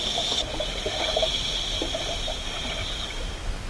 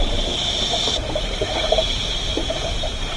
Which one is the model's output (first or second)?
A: second